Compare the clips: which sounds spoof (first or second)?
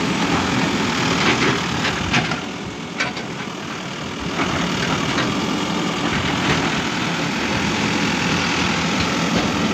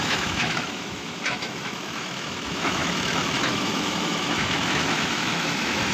second